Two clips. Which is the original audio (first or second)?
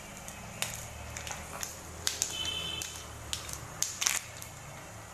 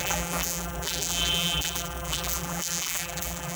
first